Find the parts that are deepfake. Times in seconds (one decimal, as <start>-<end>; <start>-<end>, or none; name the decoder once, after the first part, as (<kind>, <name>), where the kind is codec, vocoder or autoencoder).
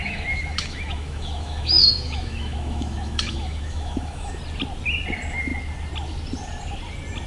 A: 0.0-4.4 (autoencoder, DAC-VAE)